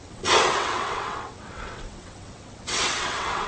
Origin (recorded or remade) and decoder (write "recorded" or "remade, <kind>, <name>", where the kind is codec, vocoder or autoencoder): remade, vocoder, WaveNeXt